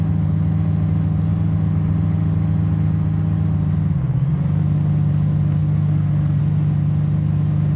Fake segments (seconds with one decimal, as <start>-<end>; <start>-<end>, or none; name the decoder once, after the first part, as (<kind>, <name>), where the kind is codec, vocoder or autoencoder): 5.6-6.4 (codec, SNAC)